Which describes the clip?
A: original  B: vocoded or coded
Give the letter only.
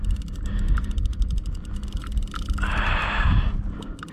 A